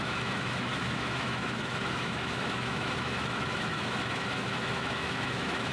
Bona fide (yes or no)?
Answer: no